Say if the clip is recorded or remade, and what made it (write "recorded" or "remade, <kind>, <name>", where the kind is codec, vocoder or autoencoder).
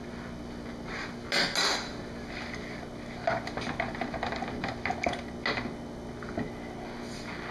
recorded